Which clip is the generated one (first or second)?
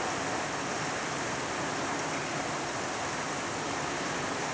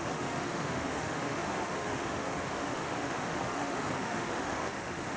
second